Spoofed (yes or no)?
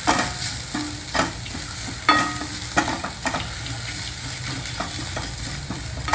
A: no